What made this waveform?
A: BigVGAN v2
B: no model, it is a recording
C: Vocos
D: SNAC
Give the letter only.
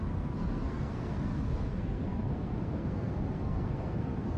D